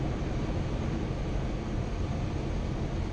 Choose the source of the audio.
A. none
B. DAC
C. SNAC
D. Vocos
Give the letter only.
A